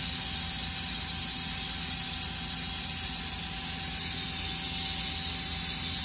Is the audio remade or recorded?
recorded